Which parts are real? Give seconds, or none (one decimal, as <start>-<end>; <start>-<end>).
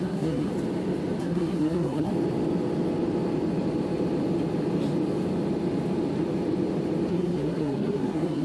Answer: 0.5-1.2; 2.1-7.1